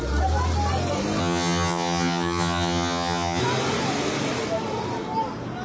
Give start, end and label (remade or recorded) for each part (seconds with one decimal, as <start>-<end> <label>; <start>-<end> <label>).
0.0-1.2 recorded; 1.2-3.4 remade; 3.4-5.6 recorded